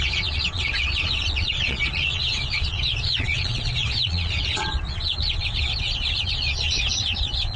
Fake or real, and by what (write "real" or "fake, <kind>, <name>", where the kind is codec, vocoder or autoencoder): fake, vocoder, Vocos